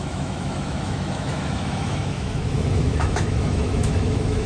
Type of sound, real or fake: fake